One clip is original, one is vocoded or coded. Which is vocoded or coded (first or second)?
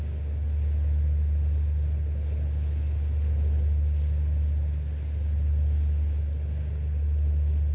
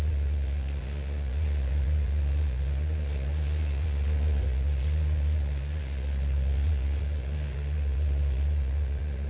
second